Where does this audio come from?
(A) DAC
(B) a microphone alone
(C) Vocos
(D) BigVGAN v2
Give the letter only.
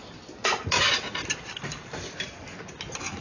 B